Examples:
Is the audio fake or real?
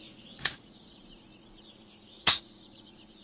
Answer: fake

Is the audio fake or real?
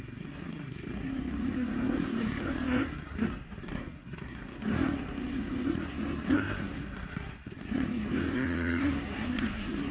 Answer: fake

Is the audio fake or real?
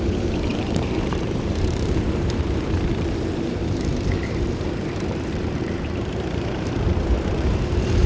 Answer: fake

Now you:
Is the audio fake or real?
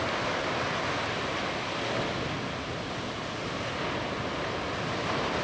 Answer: real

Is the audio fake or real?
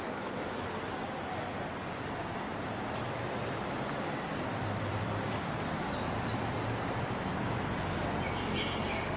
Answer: fake